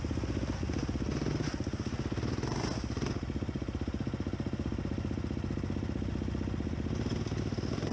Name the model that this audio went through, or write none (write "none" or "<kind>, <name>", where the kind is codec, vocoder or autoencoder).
none